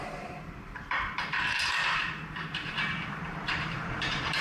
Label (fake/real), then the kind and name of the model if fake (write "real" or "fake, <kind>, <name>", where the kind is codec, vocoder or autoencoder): fake, vocoder, BigVGAN v2